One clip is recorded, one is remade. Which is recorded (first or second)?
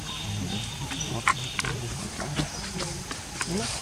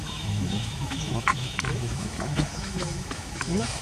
first